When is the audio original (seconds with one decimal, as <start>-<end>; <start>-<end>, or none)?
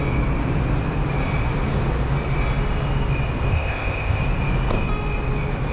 0.0-3.5; 4.2-5.7